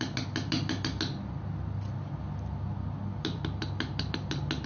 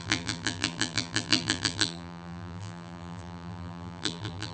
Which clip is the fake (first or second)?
second